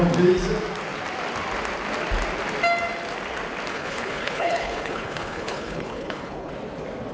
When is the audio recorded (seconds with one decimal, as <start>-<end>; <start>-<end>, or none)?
0.0-3.7; 6.5-7.1